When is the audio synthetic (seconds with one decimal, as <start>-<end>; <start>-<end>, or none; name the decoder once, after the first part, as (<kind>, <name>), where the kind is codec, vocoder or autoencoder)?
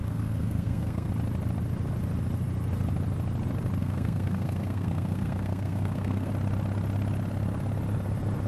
0.0-1.1 (codec, SNAC); 3.8-6.3